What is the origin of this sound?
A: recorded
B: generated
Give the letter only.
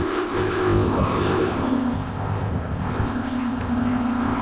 B